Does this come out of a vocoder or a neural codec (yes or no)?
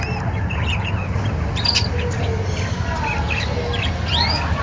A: no